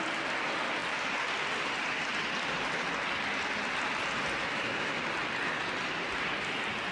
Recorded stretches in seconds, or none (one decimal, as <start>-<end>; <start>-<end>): 0.0-4.4; 5.0-6.9